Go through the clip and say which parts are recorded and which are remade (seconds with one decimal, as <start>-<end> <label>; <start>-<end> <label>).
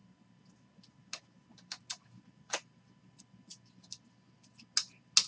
0.0-5.3 recorded